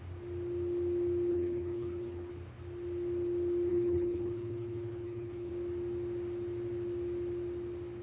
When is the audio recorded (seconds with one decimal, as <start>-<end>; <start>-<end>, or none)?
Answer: 0.0-1.3; 2.3-3.7; 5.5-8.0